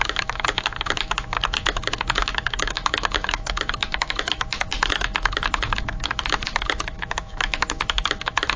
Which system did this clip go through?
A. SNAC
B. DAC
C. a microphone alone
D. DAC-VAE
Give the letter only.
D